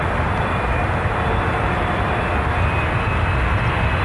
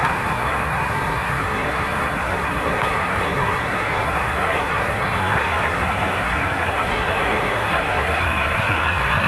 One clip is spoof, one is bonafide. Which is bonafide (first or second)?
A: first